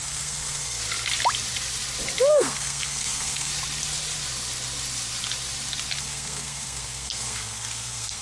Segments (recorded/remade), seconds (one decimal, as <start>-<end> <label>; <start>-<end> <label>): 0.0-0.8 remade; 0.8-2.3 recorded; 2.3-3.5 remade; 3.5-6.0 recorded; 6.0-8.2 remade